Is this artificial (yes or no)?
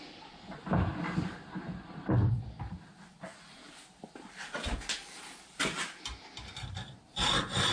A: no